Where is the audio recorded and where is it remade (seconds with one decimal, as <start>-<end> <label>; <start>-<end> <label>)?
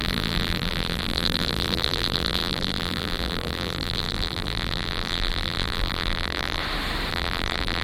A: 0.0-6.6 remade; 6.6-7.1 recorded; 7.1-7.8 remade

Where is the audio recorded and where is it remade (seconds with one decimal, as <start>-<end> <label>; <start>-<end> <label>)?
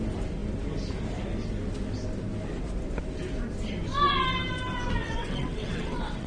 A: 0.0-5.0 recorded; 5.0-6.3 remade